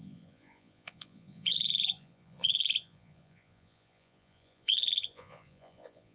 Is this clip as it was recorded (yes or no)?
no